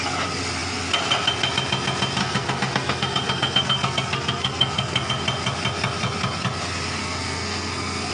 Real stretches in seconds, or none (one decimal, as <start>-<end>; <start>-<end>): 0.0-2.2; 5.1-7.0